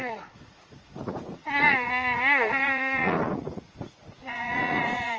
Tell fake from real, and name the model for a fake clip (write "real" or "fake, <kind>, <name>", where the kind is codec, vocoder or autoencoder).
fake, vocoder, Vocos